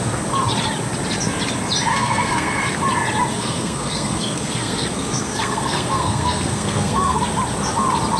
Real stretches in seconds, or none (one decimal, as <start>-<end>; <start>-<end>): 0.0-1.9; 2.6-3.3; 7.2-8.2